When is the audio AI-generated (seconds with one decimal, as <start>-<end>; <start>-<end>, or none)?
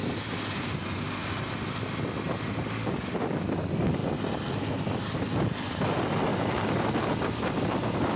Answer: none